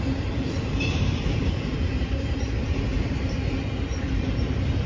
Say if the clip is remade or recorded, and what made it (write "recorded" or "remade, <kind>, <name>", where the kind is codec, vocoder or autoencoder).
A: remade, vocoder, BigVGAN v2